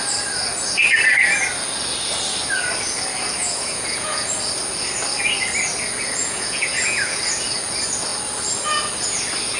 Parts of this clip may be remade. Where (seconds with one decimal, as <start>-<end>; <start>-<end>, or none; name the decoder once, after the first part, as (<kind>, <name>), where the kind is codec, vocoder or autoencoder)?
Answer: 3.4-4.3 (vocoder, Vocos); 6.2-7.2